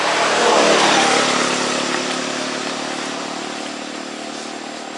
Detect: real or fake real